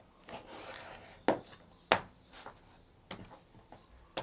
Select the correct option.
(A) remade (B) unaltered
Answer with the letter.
B